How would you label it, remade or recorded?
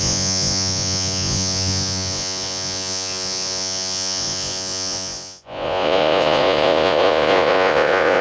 remade